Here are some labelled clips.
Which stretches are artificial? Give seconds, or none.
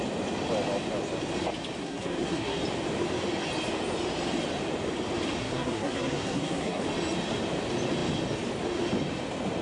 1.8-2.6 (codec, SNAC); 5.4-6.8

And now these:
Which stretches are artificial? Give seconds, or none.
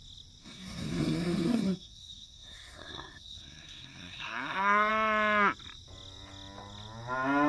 0.4-4.9 (codec, SNAC)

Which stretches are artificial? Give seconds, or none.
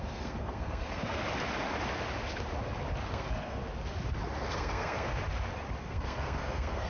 0.0-1.2 (codec, SNAC); 3.1-3.6; 4.5-5.2; 5.8-6.9